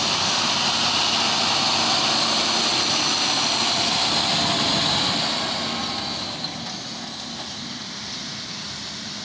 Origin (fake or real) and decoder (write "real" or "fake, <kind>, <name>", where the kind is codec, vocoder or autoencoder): real